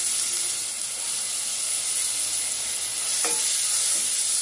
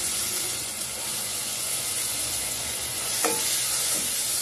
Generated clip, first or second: second